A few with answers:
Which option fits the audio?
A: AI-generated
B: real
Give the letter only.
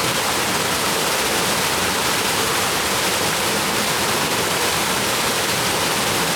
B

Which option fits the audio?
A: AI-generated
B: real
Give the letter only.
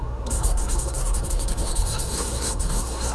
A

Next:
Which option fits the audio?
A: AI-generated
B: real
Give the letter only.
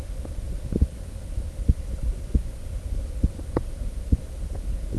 B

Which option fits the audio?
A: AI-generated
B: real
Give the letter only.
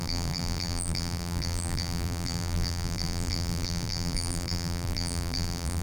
A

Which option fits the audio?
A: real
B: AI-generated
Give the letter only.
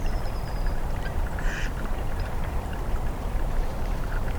B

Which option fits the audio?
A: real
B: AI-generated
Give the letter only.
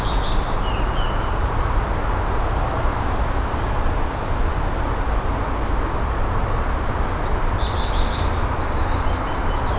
A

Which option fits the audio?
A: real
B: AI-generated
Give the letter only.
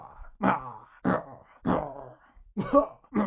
A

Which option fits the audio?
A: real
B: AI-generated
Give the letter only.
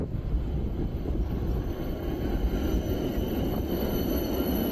A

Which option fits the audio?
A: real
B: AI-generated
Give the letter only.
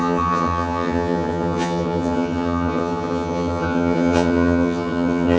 B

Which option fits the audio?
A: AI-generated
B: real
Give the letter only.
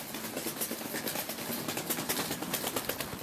B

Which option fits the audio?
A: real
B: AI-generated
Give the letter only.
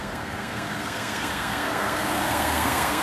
B